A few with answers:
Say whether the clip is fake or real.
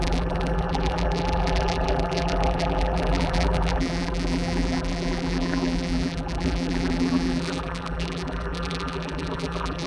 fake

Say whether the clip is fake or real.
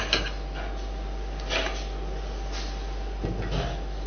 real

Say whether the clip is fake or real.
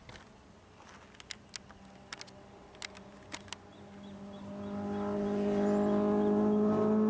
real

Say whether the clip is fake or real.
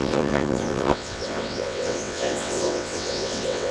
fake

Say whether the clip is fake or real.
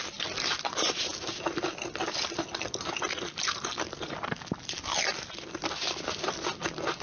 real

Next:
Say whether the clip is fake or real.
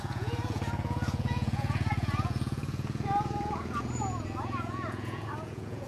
fake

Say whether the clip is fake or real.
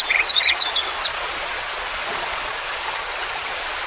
fake